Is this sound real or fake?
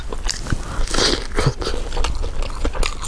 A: real